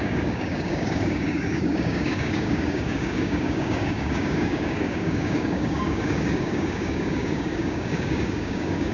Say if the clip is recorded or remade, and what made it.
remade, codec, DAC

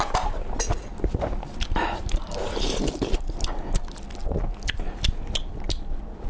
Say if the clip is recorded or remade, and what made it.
recorded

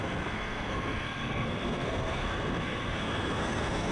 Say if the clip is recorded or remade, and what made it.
remade, codec, SNAC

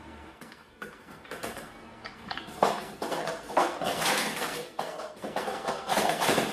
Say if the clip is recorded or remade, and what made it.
remade, codec, SNAC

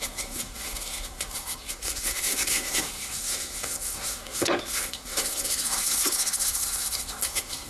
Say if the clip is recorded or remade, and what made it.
remade, codec, SNAC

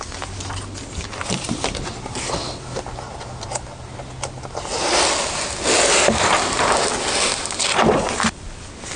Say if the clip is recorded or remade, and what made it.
recorded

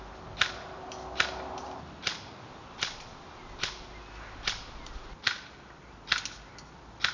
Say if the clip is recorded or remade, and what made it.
recorded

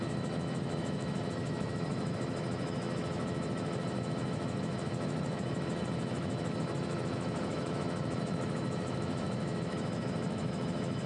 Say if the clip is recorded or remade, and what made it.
remade, autoencoder, DAC-VAE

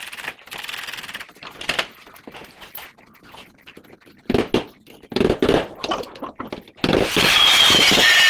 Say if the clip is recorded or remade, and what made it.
recorded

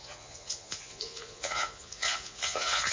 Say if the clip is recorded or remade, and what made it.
remade, vocoder, Vocos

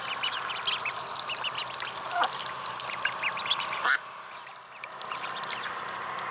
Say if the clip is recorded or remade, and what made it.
remade, vocoder, BigVGAN v2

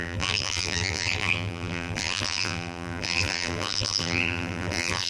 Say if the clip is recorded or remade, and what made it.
remade, vocoder, BigVGAN v2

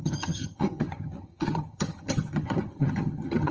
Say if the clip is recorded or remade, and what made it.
remade, vocoder, HiFi-GAN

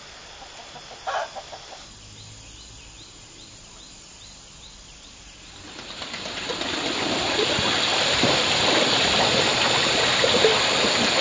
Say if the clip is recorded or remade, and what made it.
recorded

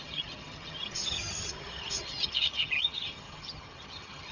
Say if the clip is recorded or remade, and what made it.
remade, vocoder, HiFi-GAN